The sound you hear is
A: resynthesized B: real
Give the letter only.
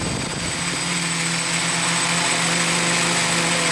B